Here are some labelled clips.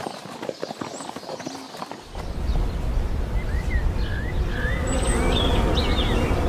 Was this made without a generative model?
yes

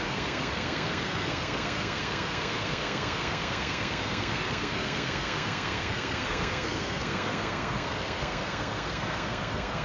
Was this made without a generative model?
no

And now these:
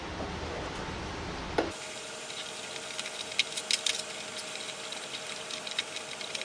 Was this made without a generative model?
yes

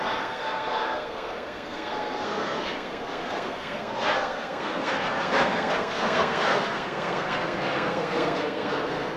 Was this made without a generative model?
no